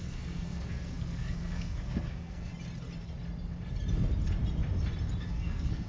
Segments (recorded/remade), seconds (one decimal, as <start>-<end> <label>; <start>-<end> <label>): 0.0-2.5 remade; 2.5-5.2 recorded; 5.2-5.9 remade